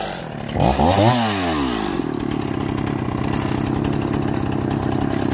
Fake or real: real